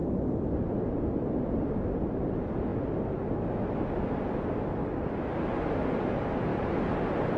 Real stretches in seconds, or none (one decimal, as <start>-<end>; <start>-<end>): 1.9-7.4